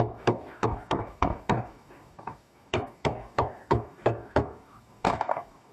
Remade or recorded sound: remade